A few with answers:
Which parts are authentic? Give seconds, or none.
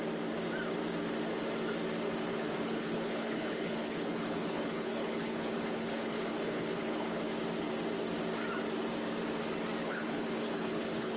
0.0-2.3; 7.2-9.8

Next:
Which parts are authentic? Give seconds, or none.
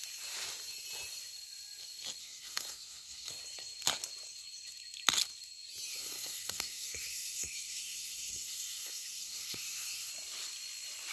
0.0-2.2; 3.3-5.9; 10.1-11.1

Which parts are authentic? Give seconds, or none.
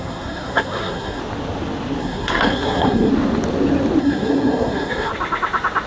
1.2-2.0; 3.1-4.0; 5.1-5.9